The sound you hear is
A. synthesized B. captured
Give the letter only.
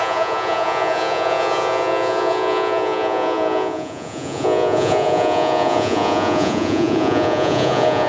A